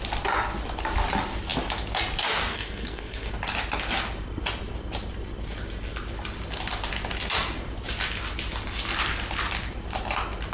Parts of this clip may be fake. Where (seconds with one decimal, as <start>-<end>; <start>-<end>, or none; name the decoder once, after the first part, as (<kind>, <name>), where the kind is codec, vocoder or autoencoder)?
2.5-3.3 (codec, SNAC)